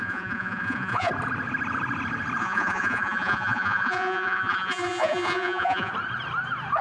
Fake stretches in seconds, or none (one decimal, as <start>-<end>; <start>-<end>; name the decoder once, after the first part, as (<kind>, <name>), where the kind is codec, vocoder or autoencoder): 0.0-1.1 (vocoder, Vocos); 2.4-5.9